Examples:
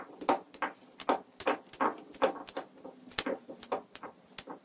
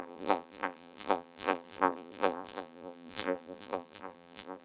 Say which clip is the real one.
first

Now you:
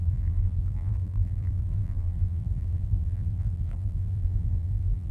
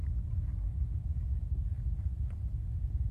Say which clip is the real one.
second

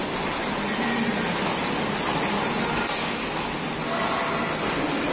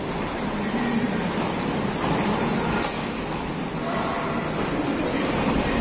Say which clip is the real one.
first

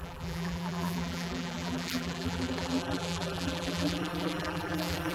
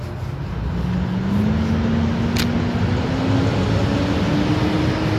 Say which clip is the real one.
second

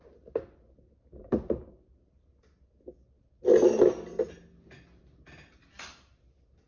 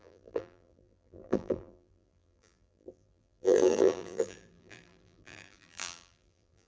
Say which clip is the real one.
first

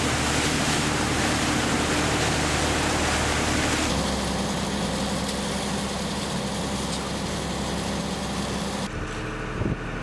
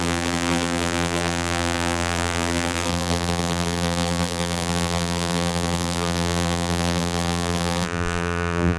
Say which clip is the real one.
first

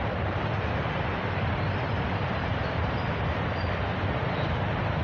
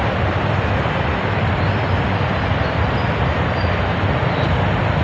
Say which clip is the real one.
second